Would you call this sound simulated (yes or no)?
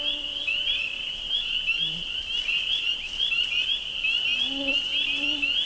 no